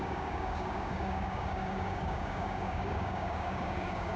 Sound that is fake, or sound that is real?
fake